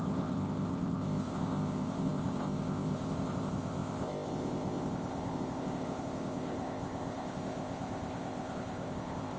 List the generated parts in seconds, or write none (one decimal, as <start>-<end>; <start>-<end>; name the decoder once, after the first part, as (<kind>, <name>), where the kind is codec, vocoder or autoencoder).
0.0-9.4 (codec, ZipCodec)